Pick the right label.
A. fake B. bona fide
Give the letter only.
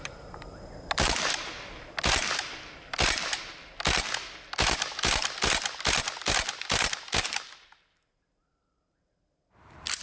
B